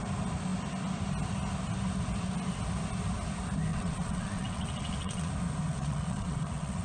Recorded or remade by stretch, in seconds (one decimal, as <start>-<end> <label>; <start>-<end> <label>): 0.0-3.7 recorded; 3.7-5.3 remade; 5.3-5.7 recorded; 5.7-6.8 remade